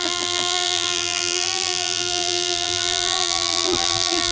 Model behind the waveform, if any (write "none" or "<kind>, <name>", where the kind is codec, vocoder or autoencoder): vocoder, BigVGAN v2